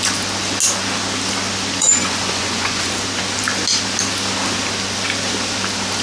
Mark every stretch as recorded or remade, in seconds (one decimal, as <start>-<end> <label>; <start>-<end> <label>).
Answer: 0.0-1.8 recorded; 1.8-2.9 remade; 2.9-6.0 recorded